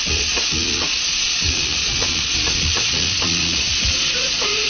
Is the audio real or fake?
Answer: fake